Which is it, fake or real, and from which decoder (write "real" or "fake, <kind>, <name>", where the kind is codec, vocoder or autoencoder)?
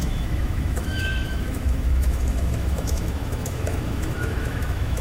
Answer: fake, autoencoder, DAC-VAE